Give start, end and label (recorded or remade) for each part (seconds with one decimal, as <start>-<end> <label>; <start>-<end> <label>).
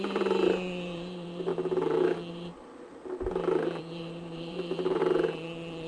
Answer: 0.0-1.5 remade; 1.5-2.3 recorded; 2.3-2.7 remade; 2.7-3.8 recorded; 3.8-5.0 remade; 5.0-5.9 recorded